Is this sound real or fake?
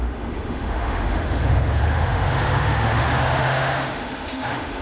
fake